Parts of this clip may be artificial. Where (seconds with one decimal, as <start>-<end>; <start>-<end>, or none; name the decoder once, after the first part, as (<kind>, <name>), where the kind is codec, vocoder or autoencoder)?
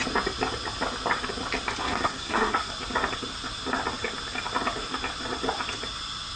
1.8-2.7 (codec, SNAC)